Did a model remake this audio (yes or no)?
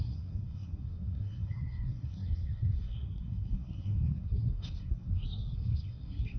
yes